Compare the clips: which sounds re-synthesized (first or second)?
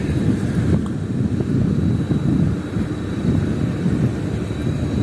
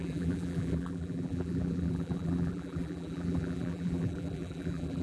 second